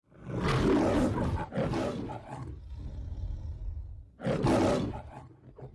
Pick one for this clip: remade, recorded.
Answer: recorded